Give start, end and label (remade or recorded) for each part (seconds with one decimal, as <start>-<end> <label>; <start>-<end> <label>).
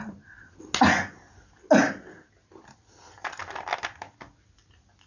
0.0-5.1 recorded